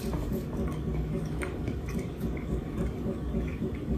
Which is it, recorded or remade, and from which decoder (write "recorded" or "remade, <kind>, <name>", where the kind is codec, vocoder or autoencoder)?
remade, codec, DAC